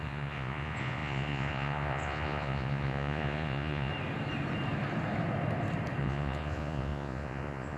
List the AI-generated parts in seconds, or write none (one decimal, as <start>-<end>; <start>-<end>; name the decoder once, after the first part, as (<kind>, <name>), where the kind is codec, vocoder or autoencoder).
0.0-3.9 (vocoder, Vocos); 6.0-7.8